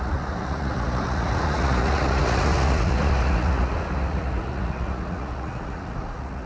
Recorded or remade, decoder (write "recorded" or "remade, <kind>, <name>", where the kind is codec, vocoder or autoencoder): remade, vocoder, Vocos